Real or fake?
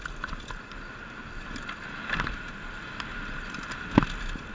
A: real